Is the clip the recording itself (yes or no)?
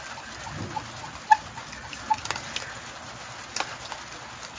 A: yes